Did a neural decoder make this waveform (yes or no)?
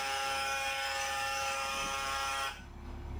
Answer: yes